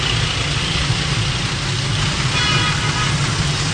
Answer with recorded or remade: recorded